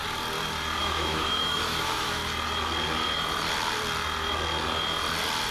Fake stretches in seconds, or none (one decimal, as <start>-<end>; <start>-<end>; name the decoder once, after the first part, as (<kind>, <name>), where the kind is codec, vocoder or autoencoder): 0.8-2.2 (autoencoder, DAC-VAE)